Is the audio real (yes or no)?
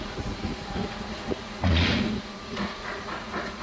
no